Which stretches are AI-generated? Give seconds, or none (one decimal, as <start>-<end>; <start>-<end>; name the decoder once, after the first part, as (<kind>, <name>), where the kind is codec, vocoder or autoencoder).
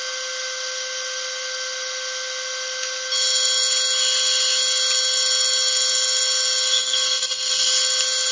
none